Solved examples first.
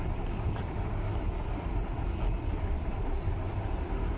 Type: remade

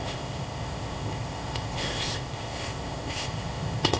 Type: remade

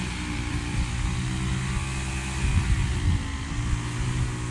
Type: recorded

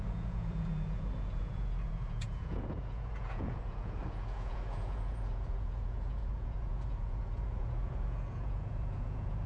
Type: remade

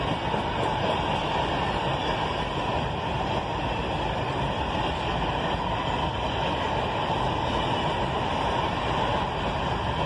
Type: recorded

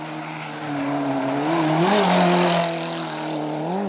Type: recorded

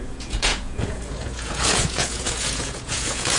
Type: remade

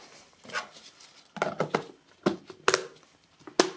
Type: recorded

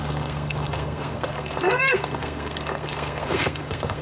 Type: remade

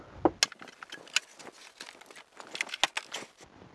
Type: recorded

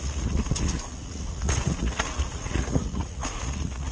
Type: remade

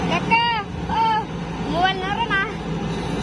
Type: recorded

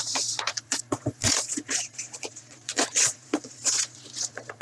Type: remade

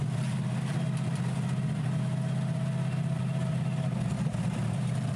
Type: remade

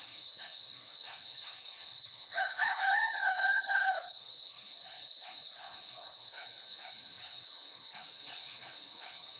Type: remade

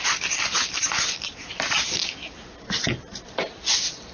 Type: recorded